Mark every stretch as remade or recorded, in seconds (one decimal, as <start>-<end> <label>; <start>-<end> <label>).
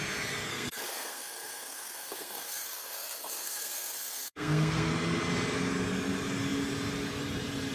0.0-0.5 recorded; 0.5-4.9 remade; 4.9-7.7 recorded